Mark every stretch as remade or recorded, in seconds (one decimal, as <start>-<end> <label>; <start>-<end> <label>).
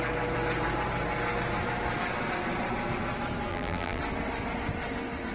0.0-3.5 recorded; 3.5-4.0 remade; 4.0-5.3 recorded